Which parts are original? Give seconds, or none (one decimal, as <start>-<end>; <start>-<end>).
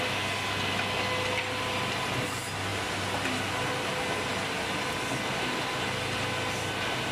0.0-7.1